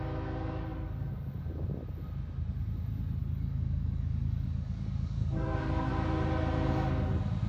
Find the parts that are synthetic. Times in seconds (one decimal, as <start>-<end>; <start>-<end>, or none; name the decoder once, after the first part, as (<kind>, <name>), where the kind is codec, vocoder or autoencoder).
3.2-5.9 (codec, DAC)